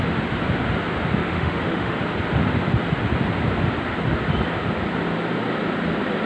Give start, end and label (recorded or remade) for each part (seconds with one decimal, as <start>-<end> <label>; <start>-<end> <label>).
0.0-1.2 recorded; 1.2-2.0 remade; 2.0-6.3 recorded